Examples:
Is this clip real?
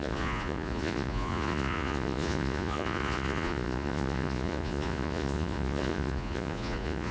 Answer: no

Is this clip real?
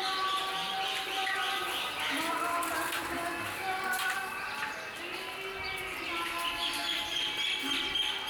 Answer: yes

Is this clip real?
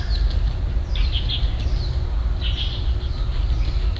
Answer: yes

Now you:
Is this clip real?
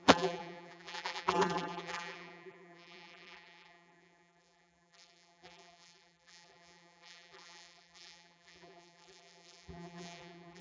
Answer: no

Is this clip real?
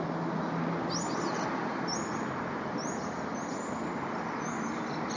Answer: yes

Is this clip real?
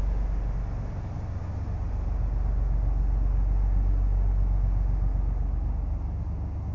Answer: yes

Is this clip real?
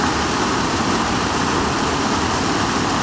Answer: yes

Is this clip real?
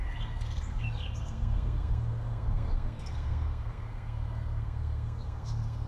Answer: no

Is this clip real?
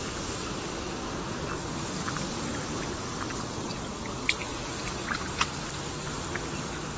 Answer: yes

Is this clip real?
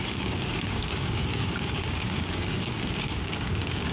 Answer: no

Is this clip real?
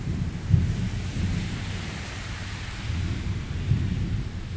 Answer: no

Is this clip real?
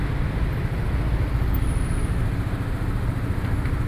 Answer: yes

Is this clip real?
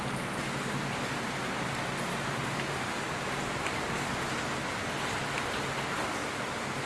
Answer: yes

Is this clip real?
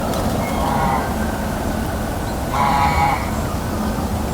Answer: yes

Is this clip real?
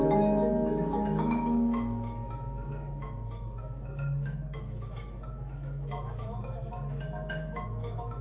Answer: no